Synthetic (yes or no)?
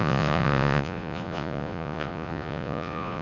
yes